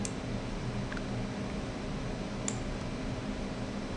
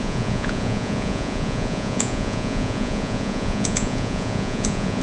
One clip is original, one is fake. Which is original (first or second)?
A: first